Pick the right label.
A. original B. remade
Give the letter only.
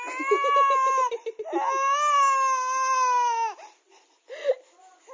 A